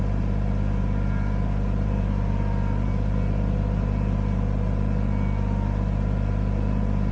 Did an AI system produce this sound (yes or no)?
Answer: no